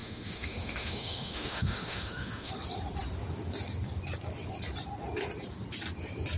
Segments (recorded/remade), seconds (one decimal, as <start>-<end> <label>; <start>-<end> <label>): 0.0-2.5 remade; 2.5-6.4 recorded